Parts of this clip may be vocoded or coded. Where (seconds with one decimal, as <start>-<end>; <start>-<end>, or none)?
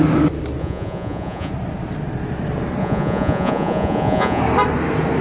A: 0.6-1.5; 2.8-4.4